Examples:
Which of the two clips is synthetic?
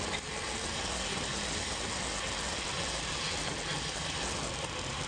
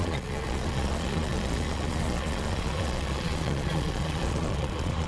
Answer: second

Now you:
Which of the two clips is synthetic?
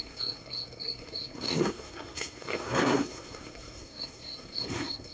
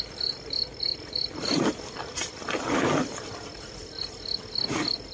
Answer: first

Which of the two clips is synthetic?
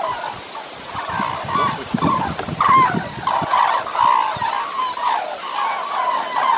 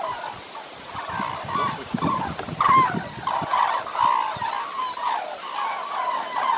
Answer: second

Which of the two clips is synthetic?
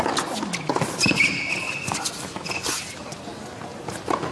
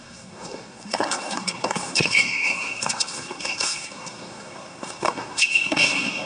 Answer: second